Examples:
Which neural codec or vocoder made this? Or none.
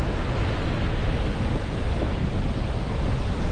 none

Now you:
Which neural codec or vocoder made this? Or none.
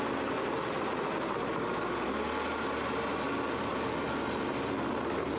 none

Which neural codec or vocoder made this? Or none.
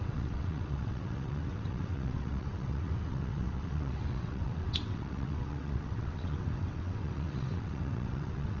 vocoder, WaveNeXt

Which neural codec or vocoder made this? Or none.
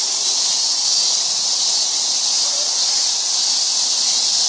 none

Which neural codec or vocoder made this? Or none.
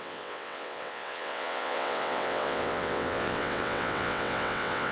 vocoder, WaveNeXt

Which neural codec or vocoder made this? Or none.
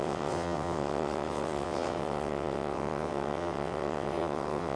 vocoder, WaveNeXt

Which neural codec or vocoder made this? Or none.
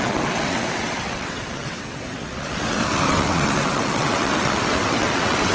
vocoder, WaveNeXt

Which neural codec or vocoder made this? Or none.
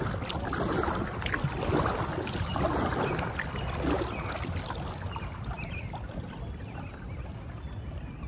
none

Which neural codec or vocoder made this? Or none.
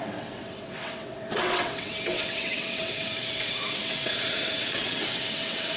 vocoder, WaveNeXt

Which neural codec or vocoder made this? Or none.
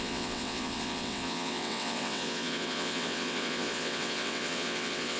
vocoder, WaveNeXt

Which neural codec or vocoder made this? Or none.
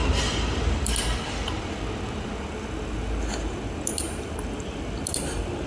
none